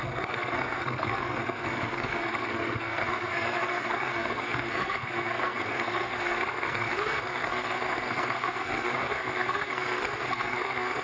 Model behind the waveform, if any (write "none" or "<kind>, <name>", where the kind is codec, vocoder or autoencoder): codec, SNAC